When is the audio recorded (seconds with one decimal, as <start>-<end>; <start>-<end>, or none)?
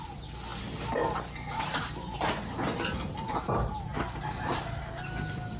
0.0-5.6